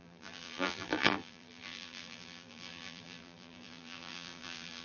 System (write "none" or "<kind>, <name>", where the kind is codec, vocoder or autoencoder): vocoder, BigVGAN v2